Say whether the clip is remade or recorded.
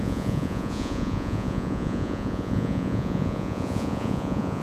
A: remade